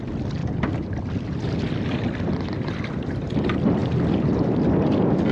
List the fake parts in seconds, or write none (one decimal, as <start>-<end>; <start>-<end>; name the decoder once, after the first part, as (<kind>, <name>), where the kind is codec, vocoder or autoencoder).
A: none